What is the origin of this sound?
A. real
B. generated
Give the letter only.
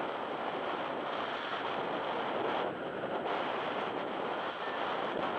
A